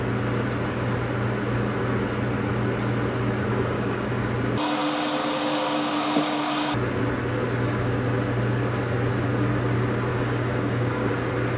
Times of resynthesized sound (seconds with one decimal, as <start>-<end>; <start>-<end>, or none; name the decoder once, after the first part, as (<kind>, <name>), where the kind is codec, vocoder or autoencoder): 3.5-4.2 (codec, DAC); 5.2-6.7; 10.1-11.1